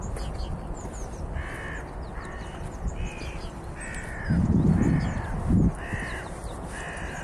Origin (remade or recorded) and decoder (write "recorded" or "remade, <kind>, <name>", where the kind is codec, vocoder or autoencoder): recorded